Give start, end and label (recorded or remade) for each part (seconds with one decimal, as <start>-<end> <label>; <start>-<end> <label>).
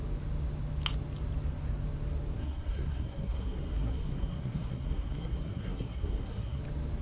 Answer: 0.0-2.4 recorded; 2.4-6.6 remade; 6.6-7.0 recorded